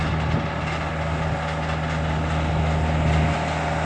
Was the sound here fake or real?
real